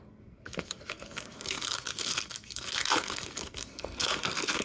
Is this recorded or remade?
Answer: remade